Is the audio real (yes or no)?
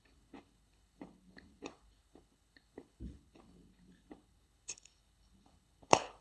no